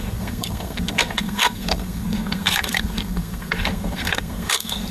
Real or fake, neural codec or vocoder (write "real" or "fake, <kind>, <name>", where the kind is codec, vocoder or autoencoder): fake, codec, SNAC